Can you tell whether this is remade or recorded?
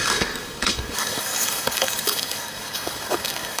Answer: remade